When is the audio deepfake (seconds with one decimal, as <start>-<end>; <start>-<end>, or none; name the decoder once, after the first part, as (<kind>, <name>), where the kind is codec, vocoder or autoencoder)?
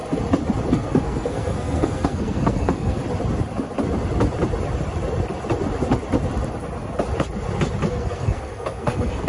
0.7-3.0 (codec, SNAC); 7.9-9.3